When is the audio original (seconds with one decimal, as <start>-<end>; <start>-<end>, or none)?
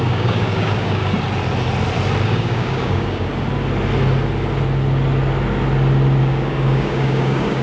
1.0-2.2; 3.3-6.2